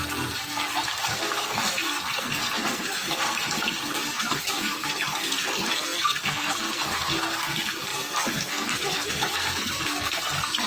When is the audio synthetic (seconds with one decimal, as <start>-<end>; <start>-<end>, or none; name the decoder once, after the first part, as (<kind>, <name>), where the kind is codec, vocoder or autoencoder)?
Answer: 0.0-10.7 (codec, SNAC)